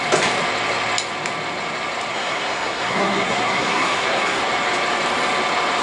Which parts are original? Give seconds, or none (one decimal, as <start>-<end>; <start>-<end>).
0.0-2.1; 4.4-5.8